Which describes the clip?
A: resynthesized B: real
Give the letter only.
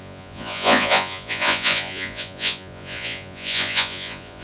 A